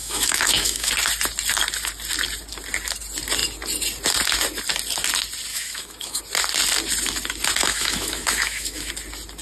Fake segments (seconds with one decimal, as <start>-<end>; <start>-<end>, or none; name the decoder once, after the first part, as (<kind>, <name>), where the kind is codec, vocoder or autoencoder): 0.0-0.9 (autoencoder, DAC-VAE); 5.5-6.2; 7.6-8.9